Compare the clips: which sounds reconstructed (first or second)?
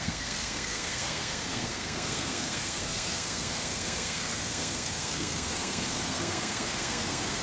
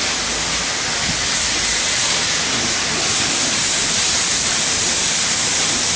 first